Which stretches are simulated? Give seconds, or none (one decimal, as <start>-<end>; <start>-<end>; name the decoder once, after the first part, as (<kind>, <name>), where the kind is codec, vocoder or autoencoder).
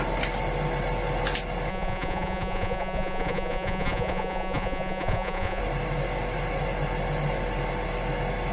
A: 1.7-5.6 (vocoder, Vocos)